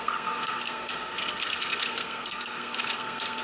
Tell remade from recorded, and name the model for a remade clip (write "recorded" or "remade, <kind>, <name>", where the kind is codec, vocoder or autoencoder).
remade, codec, SNAC